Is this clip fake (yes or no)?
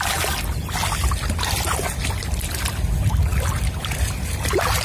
no